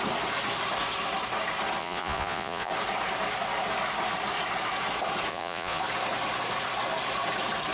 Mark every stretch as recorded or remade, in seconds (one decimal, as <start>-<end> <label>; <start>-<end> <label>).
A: 0.0-1.8 recorded; 1.8-2.7 remade; 2.7-5.3 recorded; 5.3-5.8 remade; 5.8-7.7 recorded